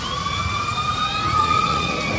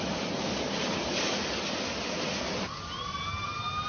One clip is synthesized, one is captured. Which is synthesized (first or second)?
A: first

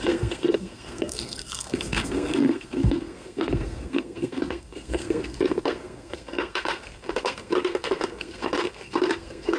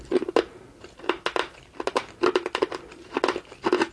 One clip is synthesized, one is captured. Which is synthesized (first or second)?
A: first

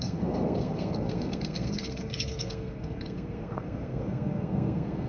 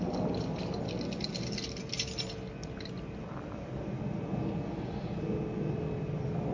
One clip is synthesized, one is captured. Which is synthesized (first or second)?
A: first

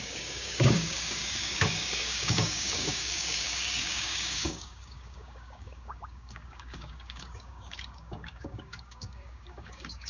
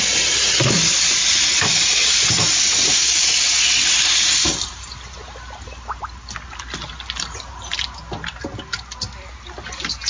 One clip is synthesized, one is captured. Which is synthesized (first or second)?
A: first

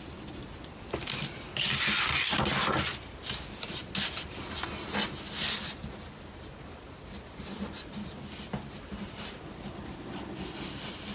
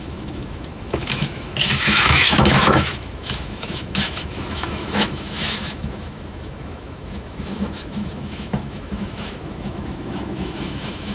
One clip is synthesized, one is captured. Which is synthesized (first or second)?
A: second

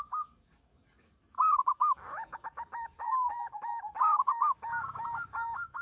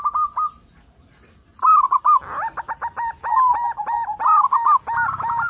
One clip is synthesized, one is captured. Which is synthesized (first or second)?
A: first